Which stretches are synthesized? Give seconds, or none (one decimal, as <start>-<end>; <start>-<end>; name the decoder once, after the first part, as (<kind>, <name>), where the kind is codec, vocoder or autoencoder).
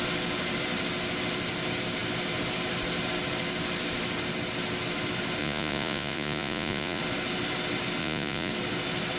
5.4-7.0 (vocoder, Vocos); 8.0-8.5